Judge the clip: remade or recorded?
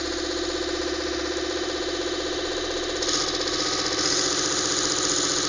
recorded